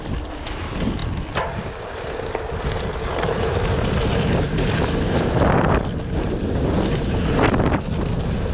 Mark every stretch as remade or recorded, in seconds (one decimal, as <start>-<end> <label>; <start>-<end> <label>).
0.0-8.5 recorded